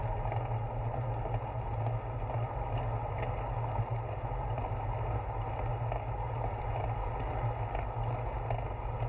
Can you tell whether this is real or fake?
real